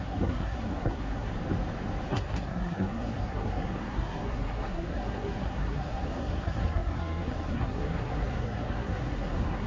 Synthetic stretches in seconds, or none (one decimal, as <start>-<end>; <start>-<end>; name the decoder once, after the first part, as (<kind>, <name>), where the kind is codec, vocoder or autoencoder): 0.0-1.3 (codec, SNAC); 2.1-9.7